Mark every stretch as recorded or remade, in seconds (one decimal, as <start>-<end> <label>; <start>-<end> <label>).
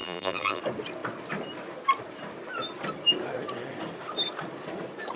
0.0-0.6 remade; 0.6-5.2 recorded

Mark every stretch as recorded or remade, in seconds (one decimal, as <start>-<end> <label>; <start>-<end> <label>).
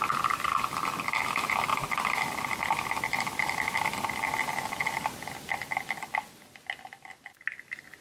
0.0-8.0 recorded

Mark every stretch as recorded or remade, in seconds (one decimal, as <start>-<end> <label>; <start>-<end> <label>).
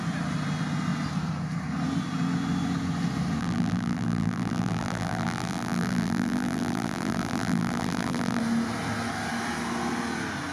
0.0-3.4 recorded; 3.4-8.4 remade; 8.4-10.5 recorded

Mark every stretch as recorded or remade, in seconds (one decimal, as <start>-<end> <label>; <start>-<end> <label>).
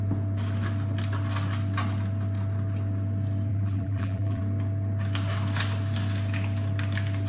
0.0-3.5 recorded; 3.5-4.4 remade; 4.4-7.3 recorded